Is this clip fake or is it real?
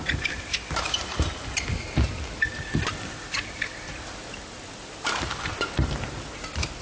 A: real